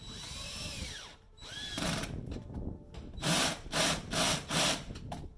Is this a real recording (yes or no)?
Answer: no